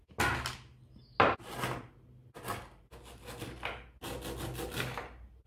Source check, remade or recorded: recorded